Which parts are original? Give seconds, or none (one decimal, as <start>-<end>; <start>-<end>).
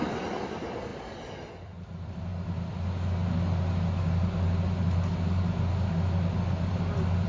2.3-6.7